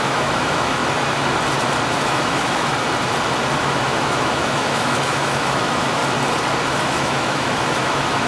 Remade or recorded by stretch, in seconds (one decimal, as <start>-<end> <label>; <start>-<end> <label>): 0.0-0.8 remade; 0.8-1.9 recorded; 1.9-2.7 remade; 2.7-3.6 recorded; 3.6-6.0 remade; 6.0-6.8 recorded; 6.8-8.3 remade